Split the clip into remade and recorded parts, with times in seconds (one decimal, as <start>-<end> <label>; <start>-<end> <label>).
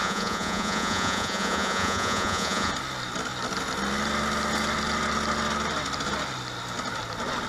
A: 0.0-2.7 remade; 2.7-7.5 recorded